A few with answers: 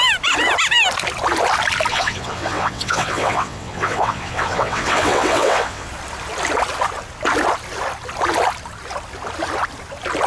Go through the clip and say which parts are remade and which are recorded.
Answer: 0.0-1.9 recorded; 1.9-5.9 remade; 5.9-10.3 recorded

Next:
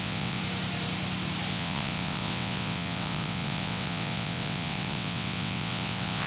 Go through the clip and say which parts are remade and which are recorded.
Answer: 0.0-0.4 remade; 0.4-1.5 recorded; 1.5-6.3 remade

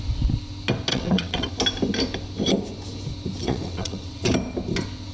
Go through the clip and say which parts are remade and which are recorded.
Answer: 0.0-0.9 recorded; 0.9-1.5 remade; 1.5-3.4 recorded; 3.4-4.3 remade; 4.3-5.1 recorded

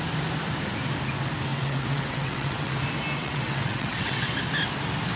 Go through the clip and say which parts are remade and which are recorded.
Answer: 0.0-1.5 recorded; 1.5-2.7 remade; 2.7-3.2 recorded; 3.2-4.3 remade; 4.3-5.2 recorded

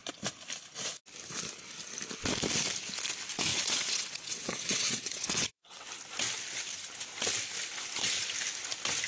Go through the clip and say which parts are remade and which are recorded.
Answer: 0.0-3.5 recorded; 3.5-5.9 remade; 5.9-9.1 recorded

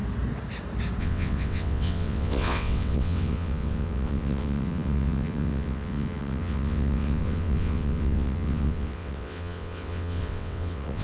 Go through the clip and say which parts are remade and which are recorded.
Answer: 0.0-1.0 recorded; 1.0-11.0 remade

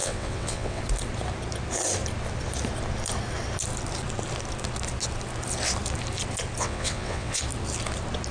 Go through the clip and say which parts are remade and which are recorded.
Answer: 0.0-0.8 remade; 0.8-6.6 recorded; 6.6-7.4 remade; 7.4-8.3 recorded